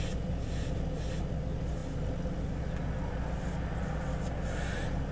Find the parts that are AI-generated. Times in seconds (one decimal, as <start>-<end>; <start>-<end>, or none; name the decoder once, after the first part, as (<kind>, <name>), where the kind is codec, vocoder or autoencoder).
none